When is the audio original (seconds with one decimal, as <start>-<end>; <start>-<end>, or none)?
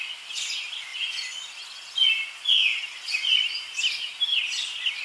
0.0-5.0